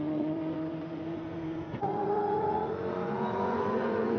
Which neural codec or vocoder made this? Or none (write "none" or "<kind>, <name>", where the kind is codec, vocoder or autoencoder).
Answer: vocoder, Vocos